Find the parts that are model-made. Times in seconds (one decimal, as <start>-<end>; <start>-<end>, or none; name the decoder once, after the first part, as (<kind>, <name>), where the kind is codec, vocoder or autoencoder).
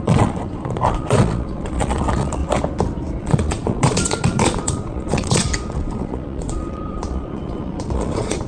0.0-2.4 (vocoder, Vocos); 3.2-8.5